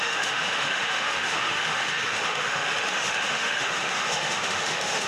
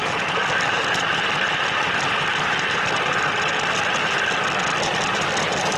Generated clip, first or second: first